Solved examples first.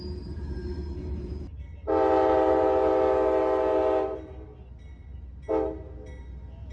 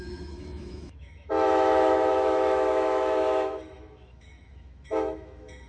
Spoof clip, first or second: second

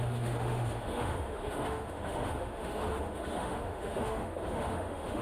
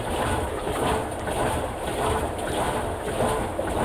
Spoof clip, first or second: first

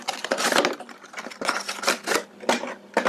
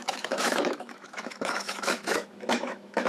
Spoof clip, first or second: second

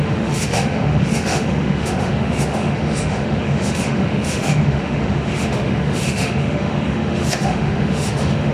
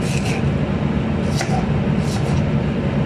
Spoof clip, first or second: first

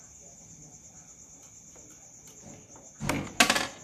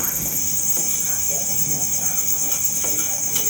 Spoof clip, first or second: second